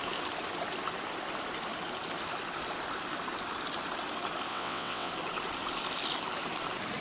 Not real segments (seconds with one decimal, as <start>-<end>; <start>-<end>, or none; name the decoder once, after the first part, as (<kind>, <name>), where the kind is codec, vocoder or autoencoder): 4.5-5.1 (vocoder, WaveNeXt)